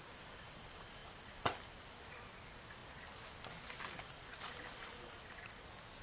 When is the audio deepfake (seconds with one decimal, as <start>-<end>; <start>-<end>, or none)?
none